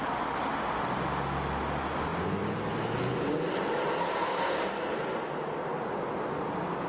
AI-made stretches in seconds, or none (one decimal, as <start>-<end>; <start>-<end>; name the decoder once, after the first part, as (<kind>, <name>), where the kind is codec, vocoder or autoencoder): none